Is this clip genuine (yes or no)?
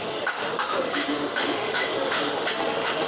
no